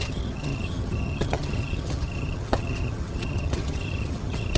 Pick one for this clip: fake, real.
fake